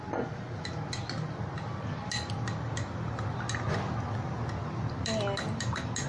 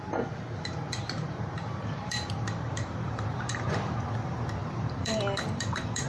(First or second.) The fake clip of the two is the second